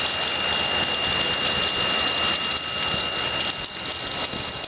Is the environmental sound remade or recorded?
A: recorded